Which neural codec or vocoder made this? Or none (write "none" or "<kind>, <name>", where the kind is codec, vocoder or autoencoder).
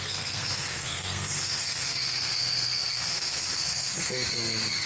codec, SNAC